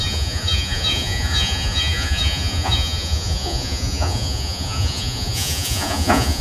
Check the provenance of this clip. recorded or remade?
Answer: remade